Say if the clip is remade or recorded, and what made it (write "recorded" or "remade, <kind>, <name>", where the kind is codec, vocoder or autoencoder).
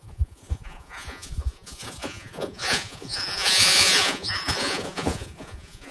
remade, vocoder, Vocos